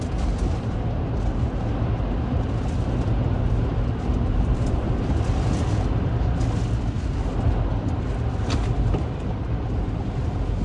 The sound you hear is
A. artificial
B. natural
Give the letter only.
B